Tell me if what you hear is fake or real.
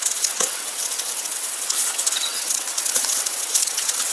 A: fake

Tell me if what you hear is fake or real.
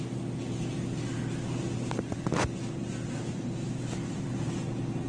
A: real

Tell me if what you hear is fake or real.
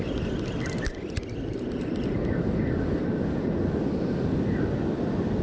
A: real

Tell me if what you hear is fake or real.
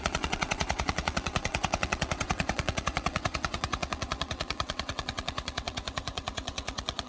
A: fake